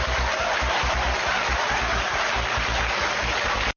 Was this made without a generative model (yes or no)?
yes